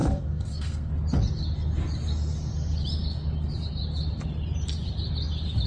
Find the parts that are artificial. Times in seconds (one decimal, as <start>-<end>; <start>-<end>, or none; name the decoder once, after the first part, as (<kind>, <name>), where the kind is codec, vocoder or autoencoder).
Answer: 0.0-0.9 (codec, SNAC)